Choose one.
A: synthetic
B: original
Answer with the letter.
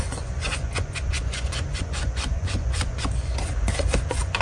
A